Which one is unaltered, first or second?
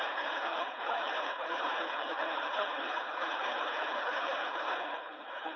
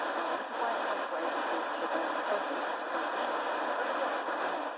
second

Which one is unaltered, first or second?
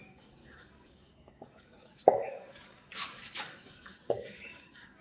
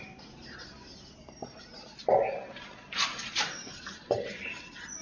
second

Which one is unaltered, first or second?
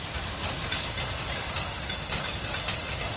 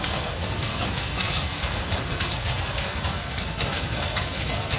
first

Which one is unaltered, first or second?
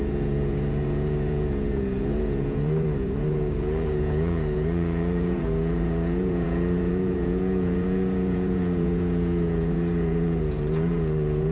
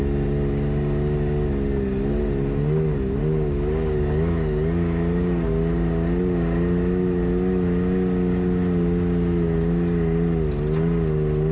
second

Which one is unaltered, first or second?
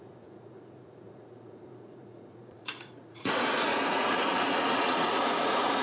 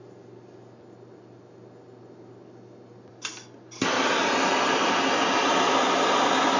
second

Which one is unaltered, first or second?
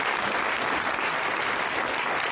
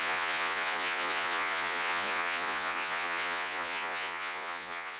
first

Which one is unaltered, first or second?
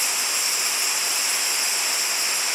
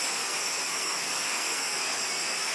first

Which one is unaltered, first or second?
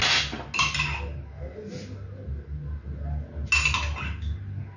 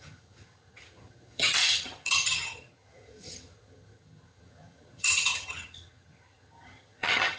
first